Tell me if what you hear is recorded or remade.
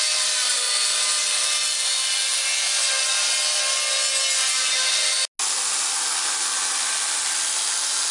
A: recorded